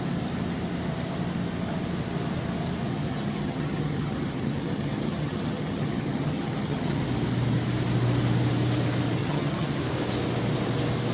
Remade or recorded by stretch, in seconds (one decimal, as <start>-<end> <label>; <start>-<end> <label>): 0.0-2.9 recorded; 2.9-7.0 remade; 7.0-9.2 recorded; 9.2-9.8 remade; 9.8-11.1 recorded